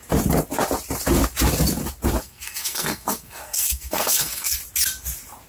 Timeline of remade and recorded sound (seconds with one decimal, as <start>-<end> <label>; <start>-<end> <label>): 0.0-2.2 recorded; 2.2-4.6 remade; 4.6-5.5 recorded